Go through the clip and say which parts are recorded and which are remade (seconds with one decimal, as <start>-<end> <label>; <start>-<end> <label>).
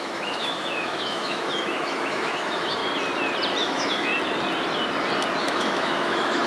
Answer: 0.0-2.8 remade; 2.8-3.6 recorded; 3.6-4.1 remade; 4.1-5.4 recorded; 5.4-6.5 remade